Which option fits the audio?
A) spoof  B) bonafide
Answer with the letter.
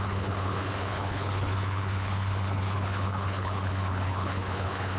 A